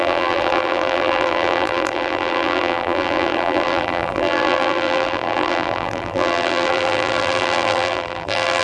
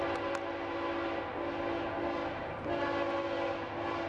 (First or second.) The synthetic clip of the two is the first